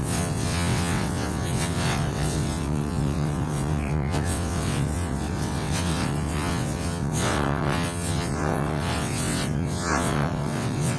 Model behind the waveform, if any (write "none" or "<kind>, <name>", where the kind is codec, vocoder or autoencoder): vocoder, WaveNeXt